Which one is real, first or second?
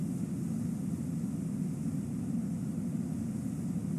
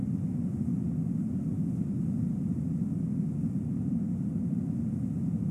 first